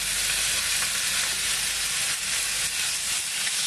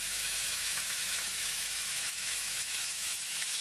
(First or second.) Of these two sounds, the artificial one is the second